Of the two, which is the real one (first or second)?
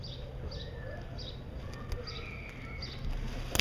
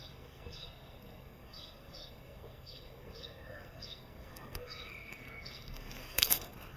first